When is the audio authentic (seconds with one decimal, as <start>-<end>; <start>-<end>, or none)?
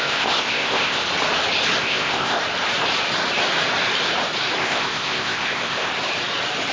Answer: 1.0-1.8; 2.4-4.6; 5.9-6.7